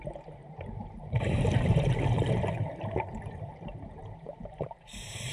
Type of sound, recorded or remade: remade